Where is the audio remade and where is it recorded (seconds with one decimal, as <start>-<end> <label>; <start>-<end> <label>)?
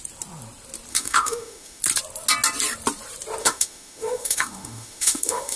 0.0-0.9 recorded; 0.9-1.8 remade; 1.8-3.4 recorded; 3.4-5.6 remade